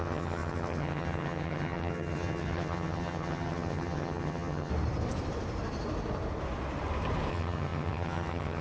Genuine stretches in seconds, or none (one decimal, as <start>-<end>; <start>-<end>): 4.7-7.3